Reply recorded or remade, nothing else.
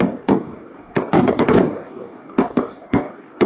remade